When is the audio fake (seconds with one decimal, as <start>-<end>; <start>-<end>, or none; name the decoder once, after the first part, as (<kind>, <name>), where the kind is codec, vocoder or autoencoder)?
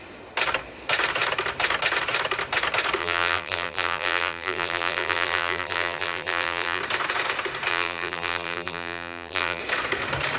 3.0-6.8 (vocoder, BigVGAN v2); 7.7-9.6